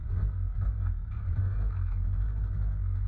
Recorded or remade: remade